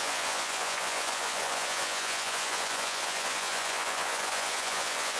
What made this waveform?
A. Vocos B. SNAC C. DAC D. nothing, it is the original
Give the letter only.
A